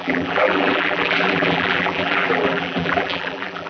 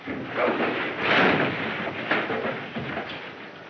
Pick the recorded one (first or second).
second